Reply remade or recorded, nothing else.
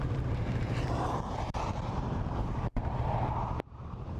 remade